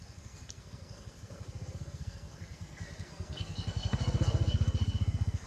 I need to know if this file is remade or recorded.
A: remade